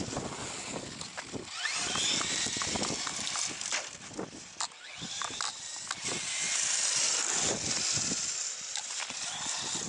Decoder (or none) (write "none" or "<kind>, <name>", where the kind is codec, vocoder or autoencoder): none